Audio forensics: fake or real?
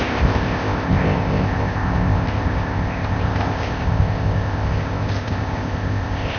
fake